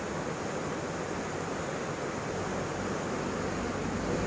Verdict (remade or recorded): recorded